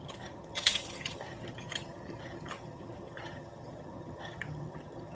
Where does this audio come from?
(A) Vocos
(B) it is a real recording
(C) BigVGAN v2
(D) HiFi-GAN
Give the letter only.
D